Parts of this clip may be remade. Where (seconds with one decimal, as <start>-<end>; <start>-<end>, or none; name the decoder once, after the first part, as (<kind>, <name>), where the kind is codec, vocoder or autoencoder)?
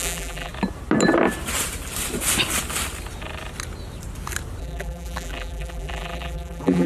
0.0-0.5 (vocoder, BigVGAN v2); 4.6-6.9